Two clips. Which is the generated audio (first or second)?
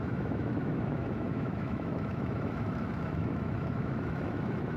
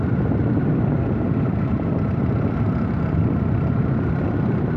first